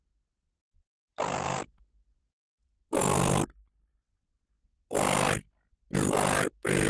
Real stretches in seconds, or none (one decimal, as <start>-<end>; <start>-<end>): 0.0-0.6; 2.6-6.9